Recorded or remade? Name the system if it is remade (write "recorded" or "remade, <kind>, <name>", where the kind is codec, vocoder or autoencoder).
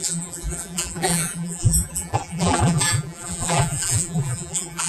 remade, vocoder, BigVGAN v2